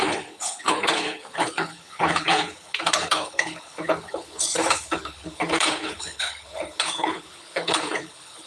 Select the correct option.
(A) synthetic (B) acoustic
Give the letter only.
A